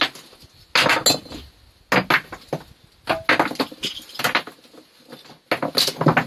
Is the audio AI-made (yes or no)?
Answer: no